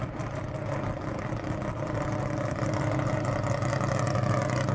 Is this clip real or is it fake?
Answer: real